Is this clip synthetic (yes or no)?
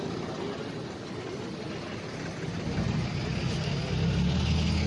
no